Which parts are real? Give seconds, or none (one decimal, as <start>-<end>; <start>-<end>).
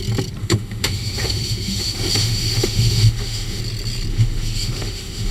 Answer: 0.0-0.4; 3.6-4.1